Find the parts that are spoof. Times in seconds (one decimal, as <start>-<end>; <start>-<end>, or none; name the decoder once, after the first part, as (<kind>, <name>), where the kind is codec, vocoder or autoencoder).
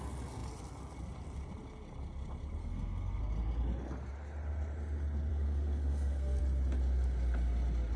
2.6-3.2 (codec, SNAC); 5.3-6.4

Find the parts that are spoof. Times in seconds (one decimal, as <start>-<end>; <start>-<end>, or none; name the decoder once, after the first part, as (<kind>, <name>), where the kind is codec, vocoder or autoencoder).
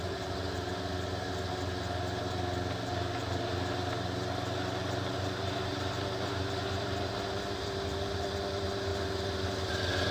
none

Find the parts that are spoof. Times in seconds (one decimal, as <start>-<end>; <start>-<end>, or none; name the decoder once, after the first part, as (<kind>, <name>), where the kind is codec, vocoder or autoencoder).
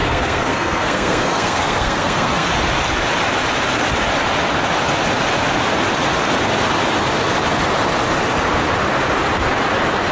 0.0-2.5 (codec, SNAC)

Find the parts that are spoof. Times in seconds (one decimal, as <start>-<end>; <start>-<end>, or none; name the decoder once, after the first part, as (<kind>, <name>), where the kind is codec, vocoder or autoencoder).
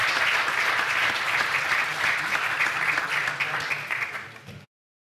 none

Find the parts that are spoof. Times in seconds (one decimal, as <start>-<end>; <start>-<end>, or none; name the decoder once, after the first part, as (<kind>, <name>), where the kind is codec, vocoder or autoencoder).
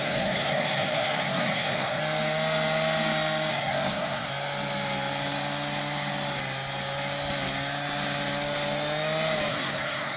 0.0-2.0 (codec, SNAC); 3.5-4.3; 9.5-10.2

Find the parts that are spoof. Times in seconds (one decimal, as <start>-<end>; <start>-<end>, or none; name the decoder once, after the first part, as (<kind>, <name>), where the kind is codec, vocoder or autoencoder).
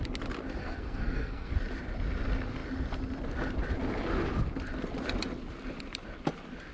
0.6-1.5 (codec, SNAC)